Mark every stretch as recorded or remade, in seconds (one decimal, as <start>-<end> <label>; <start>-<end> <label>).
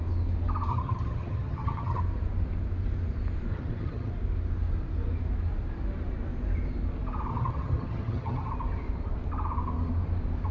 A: 0.0-0.7 recorded; 0.7-2.0 remade; 2.0-3.5 recorded; 3.5-4.1 remade; 4.1-7.3 recorded; 7.3-8.5 remade; 8.5-10.5 recorded